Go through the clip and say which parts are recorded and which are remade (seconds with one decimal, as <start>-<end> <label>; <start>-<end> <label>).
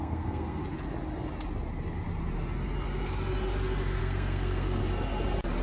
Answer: 0.0-0.6 remade; 0.6-4.0 recorded; 4.0-4.8 remade; 4.8-5.6 recorded